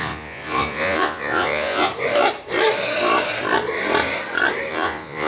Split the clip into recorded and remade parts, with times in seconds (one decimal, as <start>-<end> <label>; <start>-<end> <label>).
0.0-1.9 remade; 1.9-4.7 recorded; 4.7-5.3 remade